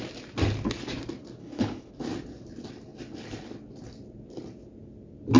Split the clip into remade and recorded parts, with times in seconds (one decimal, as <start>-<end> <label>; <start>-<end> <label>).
0.0-1.4 recorded; 1.4-1.9 remade; 1.9-5.4 recorded